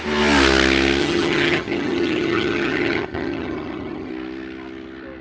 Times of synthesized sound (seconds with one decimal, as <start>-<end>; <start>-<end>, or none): 1.0-4.1